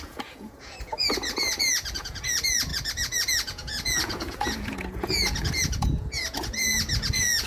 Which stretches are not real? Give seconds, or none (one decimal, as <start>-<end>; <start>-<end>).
0.0-7.5

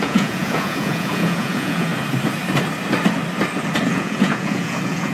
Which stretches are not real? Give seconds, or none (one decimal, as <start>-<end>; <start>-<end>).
0.0-1.9; 3.8-5.1